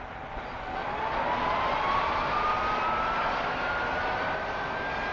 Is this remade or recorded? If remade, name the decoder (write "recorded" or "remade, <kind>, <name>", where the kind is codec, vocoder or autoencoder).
recorded